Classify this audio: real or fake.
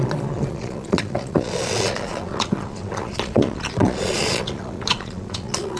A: fake